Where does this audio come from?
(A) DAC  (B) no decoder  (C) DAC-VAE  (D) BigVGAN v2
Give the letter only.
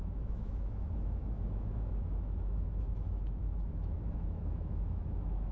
C